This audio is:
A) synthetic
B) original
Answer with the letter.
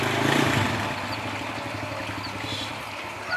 B